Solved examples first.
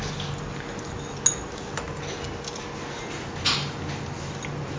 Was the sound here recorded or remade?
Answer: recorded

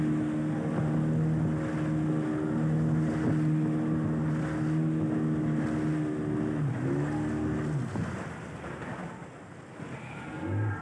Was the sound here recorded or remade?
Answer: recorded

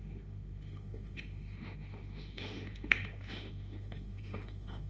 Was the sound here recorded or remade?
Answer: remade